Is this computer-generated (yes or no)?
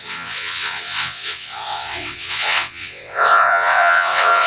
yes